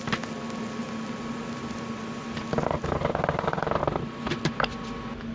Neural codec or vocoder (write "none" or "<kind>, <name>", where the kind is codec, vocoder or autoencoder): none